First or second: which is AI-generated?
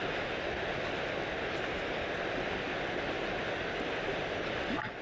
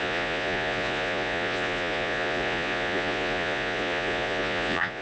second